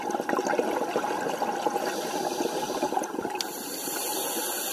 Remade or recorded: recorded